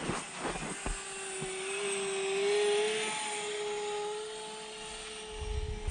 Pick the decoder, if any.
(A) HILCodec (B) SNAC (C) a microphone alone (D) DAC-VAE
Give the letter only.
C